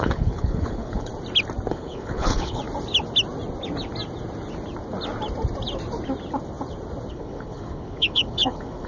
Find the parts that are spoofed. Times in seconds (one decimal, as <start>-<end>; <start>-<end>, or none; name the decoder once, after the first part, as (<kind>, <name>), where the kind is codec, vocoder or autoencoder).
0.0-1.1 (codec, HILCodec); 1.7-2.6; 7.1-8.9

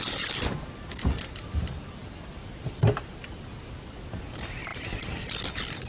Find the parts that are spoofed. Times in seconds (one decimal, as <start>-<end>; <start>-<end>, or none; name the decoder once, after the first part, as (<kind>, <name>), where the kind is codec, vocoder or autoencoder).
2.0-3.1 (vocoder, BigVGAN v2)

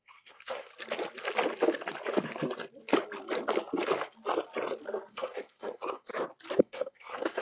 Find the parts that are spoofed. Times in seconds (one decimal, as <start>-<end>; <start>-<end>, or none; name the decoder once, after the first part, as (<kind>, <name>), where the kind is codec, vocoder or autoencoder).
0.0-0.7 (codec, SNAC); 5.1-6.1; 6.6-7.4

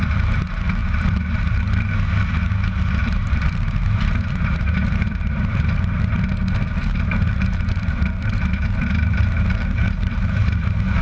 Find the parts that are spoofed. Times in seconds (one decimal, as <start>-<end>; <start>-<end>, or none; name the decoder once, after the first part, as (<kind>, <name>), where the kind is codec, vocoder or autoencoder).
0.8-1.7 (vocoder, BigVGAN v2); 3.0-6.1; 6.8-11.0

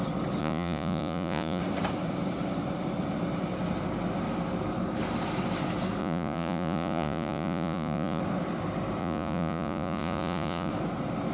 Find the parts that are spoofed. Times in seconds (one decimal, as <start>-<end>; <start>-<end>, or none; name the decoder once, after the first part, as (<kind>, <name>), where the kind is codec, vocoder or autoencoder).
0.4-1.6 (vocoder, Vocos); 6.0-8.2; 9.0-10.7

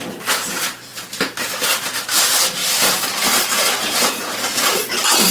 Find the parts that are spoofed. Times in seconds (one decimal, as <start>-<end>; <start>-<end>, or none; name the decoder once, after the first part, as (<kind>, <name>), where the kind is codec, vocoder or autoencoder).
none

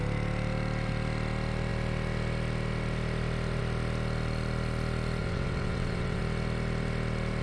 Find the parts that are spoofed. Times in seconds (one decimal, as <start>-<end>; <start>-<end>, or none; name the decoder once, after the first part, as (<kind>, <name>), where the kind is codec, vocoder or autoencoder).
5.2-6.2 (vocoder, WaveNeXt)

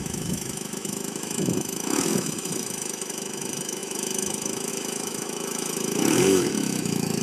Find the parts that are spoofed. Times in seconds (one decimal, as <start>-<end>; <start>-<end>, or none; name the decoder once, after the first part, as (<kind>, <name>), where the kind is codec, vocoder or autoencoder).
0.0-7.2 (autoencoder, DAC-VAE)